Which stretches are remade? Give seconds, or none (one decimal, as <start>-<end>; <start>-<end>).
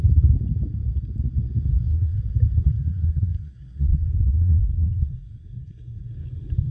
1.7-2.2; 2.6-6.1